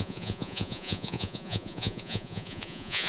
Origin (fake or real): fake